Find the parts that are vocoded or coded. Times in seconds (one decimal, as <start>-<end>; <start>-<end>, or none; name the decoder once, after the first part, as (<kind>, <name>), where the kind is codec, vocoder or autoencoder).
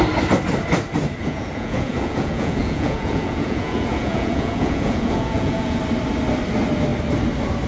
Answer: 1.2-5.8 (vocoder, Vocos)